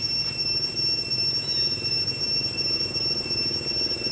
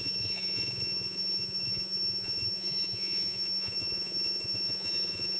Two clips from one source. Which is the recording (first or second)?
first